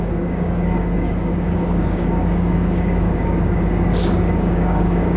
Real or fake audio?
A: fake